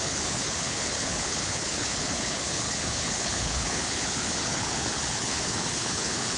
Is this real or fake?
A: fake